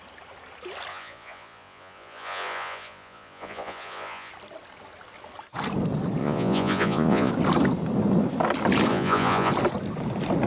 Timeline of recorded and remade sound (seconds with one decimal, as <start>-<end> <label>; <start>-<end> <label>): 0.0-0.9 recorded; 0.9-4.3 remade; 4.3-6.2 recorded; 6.2-7.3 remade; 7.3-8.9 recorded; 8.9-9.5 remade; 9.5-10.5 recorded